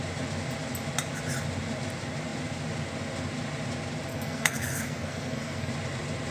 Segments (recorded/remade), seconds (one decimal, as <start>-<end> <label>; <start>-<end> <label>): 0.0-4.1 recorded; 4.1-5.7 remade; 5.7-6.3 recorded